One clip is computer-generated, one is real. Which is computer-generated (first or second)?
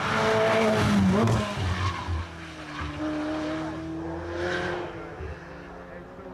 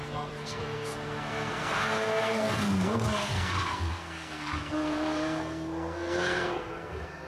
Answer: second